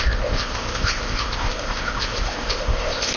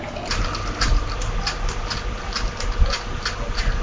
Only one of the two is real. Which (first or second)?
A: second